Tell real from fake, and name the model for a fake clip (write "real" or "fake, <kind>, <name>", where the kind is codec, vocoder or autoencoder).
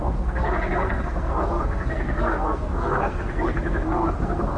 fake, codec, SNAC